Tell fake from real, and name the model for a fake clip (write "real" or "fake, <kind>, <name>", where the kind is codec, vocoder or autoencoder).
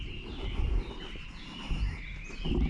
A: real